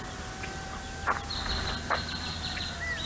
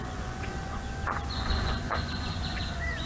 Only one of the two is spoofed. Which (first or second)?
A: second